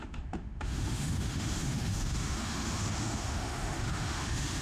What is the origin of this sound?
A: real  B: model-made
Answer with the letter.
B